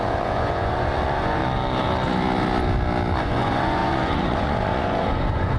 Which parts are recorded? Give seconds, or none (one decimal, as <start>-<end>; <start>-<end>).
1.4-3.2